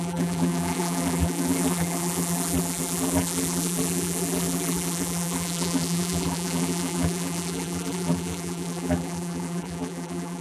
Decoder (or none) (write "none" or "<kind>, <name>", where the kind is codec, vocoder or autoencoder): vocoder, BigVGAN v2